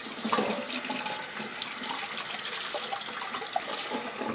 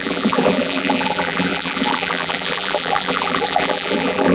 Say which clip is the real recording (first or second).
first